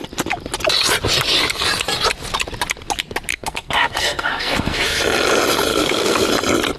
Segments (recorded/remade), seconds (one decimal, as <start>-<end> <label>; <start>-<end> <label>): 0.0-3.3 recorded; 3.3-5.0 remade; 5.0-5.7 recorded; 5.7-6.3 remade; 6.3-6.8 recorded